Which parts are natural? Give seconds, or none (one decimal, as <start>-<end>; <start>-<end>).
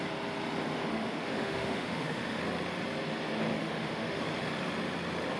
0.0-0.9; 2.4-3.5; 4.2-5.4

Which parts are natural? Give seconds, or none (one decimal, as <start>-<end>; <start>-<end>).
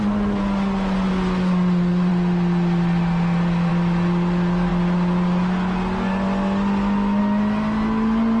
0.0-8.4